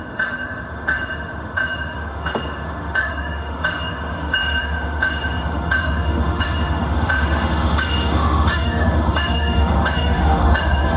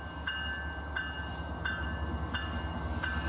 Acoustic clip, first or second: second